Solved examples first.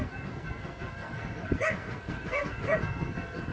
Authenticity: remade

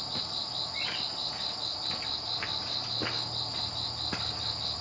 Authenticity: recorded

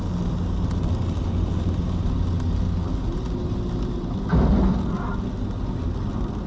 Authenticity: recorded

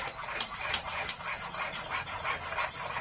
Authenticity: recorded